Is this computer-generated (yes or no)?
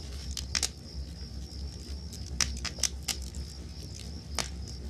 no